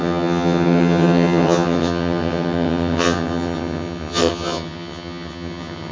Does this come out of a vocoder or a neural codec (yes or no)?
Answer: yes